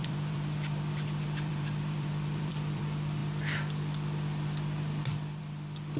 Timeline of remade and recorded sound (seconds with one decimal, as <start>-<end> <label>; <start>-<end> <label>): 0.0-2.8 remade; 2.8-6.0 recorded